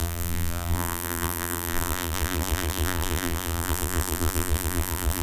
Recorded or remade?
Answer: remade